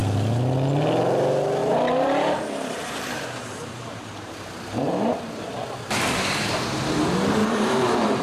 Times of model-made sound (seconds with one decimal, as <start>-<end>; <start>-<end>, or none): 1.6-5.5; 7.4-8.2